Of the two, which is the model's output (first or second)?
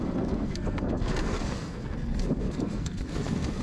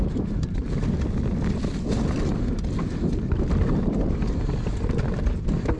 first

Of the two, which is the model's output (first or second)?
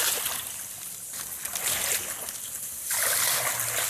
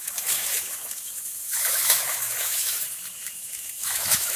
second